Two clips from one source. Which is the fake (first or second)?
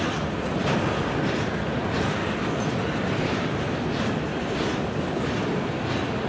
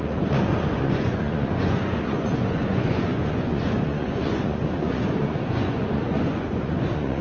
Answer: second